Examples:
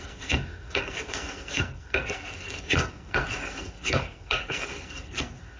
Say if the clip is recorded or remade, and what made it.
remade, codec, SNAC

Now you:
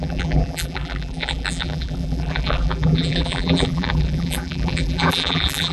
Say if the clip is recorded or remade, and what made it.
remade, vocoder, BigVGAN v2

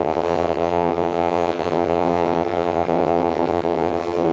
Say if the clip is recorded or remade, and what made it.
remade, vocoder, HiFi-GAN